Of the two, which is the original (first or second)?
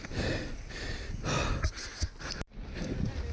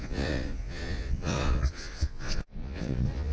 first